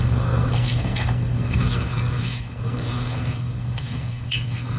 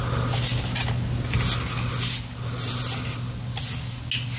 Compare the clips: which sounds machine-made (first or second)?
first